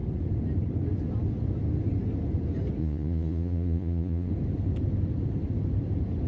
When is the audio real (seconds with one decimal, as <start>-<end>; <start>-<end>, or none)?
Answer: 0.0-2.8; 4.3-6.3